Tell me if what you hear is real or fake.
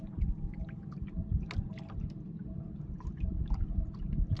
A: real